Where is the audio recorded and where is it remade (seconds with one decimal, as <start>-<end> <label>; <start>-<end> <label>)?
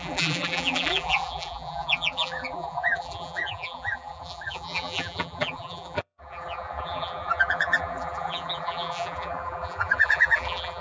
0.0-10.8 remade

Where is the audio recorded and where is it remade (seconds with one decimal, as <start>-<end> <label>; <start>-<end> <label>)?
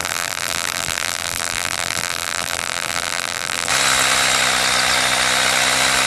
0.0-3.7 remade; 3.7-6.1 recorded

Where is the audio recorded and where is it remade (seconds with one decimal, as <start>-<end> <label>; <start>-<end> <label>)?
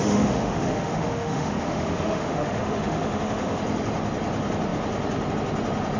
0.0-3.6 remade; 3.6-6.0 recorded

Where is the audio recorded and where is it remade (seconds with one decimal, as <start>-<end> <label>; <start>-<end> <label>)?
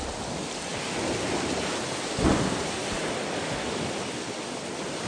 0.0-5.1 recorded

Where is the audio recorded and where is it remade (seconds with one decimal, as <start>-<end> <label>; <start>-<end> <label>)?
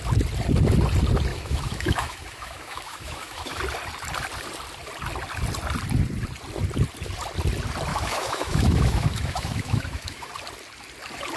0.0-1.3 recorded; 1.3-3.6 remade; 3.6-7.9 recorded; 7.9-10.3 remade; 10.3-11.4 recorded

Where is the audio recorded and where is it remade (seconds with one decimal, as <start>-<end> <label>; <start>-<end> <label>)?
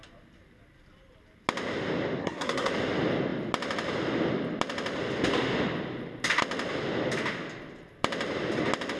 0.0-2.2 recorded; 2.2-2.7 remade; 2.7-9.0 recorded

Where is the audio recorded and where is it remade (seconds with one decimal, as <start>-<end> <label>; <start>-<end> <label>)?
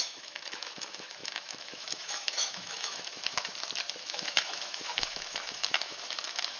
0.0-3.5 remade; 3.5-4.0 recorded; 4.0-6.6 remade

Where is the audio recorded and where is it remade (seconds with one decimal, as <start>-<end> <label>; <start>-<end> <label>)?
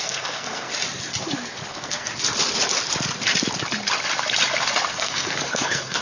0.0-0.7 remade; 0.7-1.7 recorded; 1.7-2.1 remade; 2.1-4.9 recorded; 4.9-6.0 remade